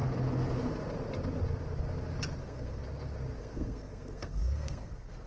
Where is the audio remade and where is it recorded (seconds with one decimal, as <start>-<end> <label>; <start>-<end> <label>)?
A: 0.0-2.4 recorded; 2.4-2.8 remade; 2.8-3.4 recorded; 3.4-5.3 remade